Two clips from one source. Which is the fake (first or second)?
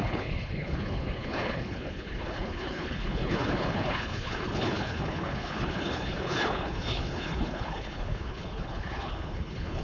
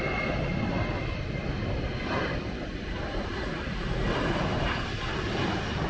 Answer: first